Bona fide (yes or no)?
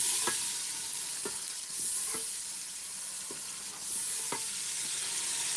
yes